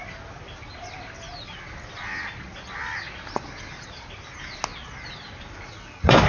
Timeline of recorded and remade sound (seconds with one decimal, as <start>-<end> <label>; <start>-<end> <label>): 0.0-6.3 recorded